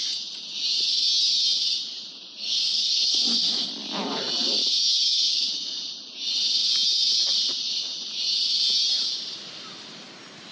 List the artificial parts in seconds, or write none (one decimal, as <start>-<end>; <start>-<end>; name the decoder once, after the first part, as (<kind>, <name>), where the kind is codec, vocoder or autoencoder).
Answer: 2.4-3.7 (codec, SNAC)